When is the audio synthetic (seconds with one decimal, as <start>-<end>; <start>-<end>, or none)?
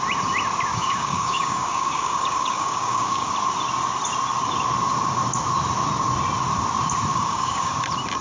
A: 0.7-3.3; 7.1-7.7